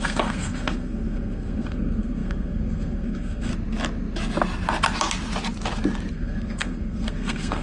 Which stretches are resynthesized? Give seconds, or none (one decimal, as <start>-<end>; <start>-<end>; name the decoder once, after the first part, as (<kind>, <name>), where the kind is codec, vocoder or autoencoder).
0.0-3.5 (codec, SNAC); 6.1-7.6